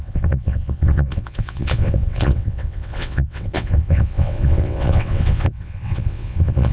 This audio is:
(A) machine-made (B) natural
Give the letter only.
A